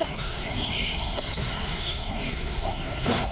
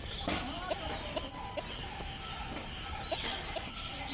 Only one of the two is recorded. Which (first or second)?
second